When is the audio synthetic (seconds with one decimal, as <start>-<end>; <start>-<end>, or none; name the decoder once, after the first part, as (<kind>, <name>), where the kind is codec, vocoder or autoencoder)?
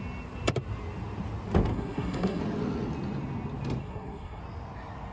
1.7-2.4 (codec, SNAC); 3.8-4.4